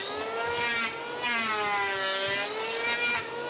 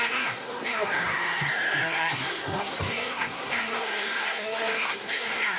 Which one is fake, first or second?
second